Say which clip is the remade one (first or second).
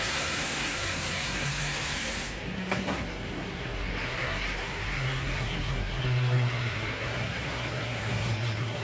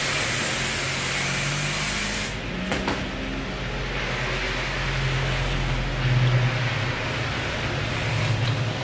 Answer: first